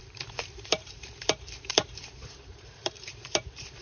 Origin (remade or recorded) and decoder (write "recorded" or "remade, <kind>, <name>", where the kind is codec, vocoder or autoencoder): remade, vocoder, BigVGAN v2